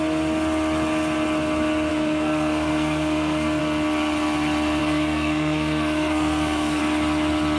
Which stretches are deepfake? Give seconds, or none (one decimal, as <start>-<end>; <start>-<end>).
1.9-3.6; 4.8-6.8